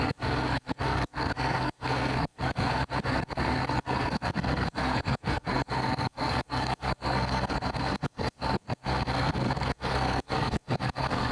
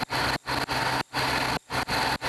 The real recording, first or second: second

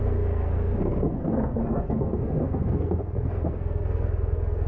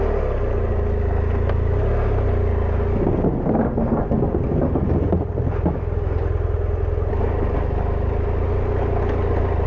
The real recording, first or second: second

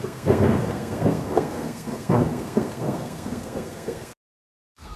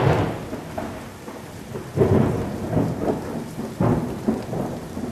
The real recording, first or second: second